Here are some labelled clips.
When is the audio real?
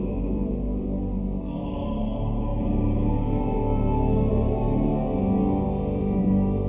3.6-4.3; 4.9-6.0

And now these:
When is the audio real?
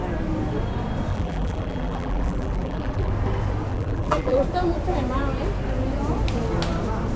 0.0-1.1; 3.1-3.7; 4.4-7.2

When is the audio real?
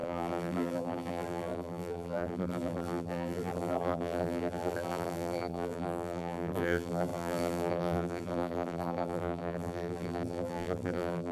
none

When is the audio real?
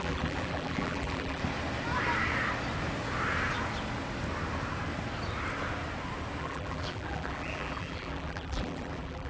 1.4-6.4